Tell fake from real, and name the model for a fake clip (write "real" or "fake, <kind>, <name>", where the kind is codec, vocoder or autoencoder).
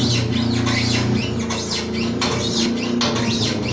real